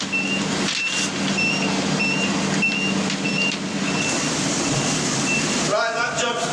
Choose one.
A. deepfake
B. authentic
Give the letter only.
B